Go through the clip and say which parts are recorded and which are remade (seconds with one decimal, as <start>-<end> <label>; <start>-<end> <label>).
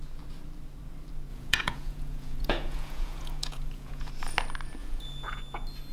0.0-1.3 recorded; 1.3-4.1 remade; 4.1-4.8 recorded; 4.8-5.4 remade; 5.4-5.9 recorded